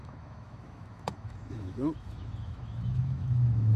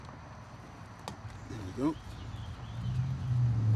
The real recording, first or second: second